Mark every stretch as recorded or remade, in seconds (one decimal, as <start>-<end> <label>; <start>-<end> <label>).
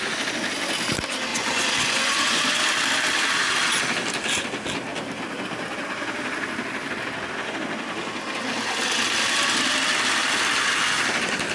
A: 0.0-1.3 recorded; 1.3-2.6 remade; 2.6-11.5 recorded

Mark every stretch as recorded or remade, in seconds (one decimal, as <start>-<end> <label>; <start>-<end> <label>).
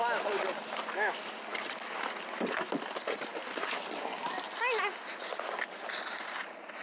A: 0.0-6.8 recorded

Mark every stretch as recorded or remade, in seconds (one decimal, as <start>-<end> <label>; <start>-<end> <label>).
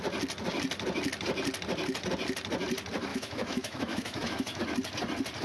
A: 0.0-3.1 recorded; 3.1-4.6 remade; 4.6-5.4 recorded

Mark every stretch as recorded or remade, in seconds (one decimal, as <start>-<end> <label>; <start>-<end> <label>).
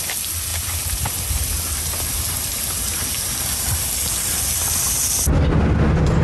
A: 0.0-6.2 recorded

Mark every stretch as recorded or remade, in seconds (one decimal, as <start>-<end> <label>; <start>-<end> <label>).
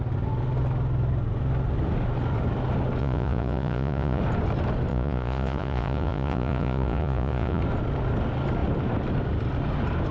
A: 0.0-3.0 recorded; 3.0-4.2 remade; 4.2-4.9 recorded; 4.9-7.6 remade; 7.6-10.1 recorded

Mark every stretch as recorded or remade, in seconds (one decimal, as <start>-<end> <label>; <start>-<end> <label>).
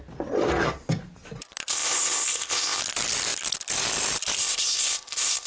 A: 0.0-1.7 recorded; 1.7-2.8 remade; 2.8-4.4 recorded; 4.4-5.5 remade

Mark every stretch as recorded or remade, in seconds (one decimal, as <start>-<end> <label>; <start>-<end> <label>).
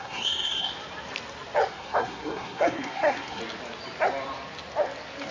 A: 0.0-0.7 remade; 0.7-1.7 recorded; 1.7-3.4 remade; 3.4-5.3 recorded